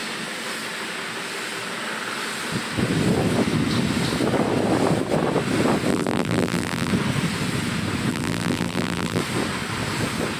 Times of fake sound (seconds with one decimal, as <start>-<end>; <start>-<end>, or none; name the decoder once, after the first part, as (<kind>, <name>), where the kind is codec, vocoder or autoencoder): 5.9-6.9 (vocoder, BigVGAN v2); 8.1-9.2